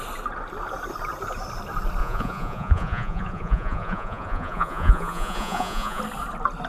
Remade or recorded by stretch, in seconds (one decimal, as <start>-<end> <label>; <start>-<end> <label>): 0.0-2.0 recorded; 2.0-6.0 remade; 6.0-6.7 recorded